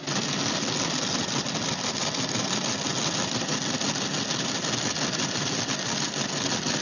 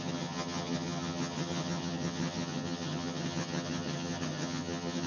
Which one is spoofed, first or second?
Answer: second